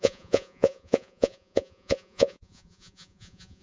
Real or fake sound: fake